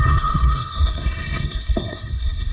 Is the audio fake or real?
fake